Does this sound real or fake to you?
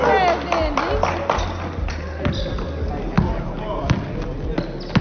real